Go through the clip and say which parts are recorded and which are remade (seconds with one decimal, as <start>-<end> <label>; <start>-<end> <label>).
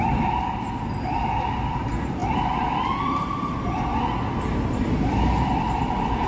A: 0.0-6.3 recorded